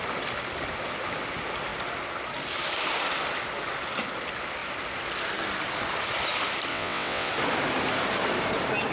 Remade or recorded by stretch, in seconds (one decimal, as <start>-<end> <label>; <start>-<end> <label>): 0.0-6.7 recorded; 6.7-7.3 remade; 7.3-8.9 recorded